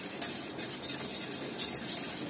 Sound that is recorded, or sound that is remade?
recorded